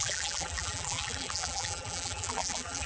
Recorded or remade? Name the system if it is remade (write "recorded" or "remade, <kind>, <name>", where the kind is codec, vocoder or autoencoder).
remade, vocoder, BigVGAN v2